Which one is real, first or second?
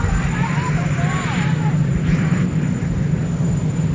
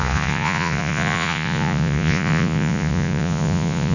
first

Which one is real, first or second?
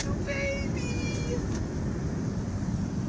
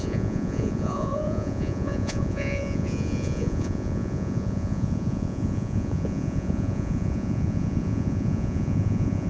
first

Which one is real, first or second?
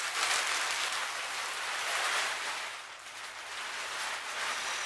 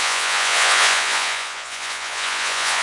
first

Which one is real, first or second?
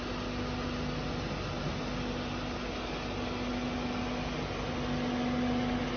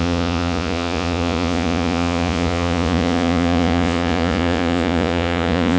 first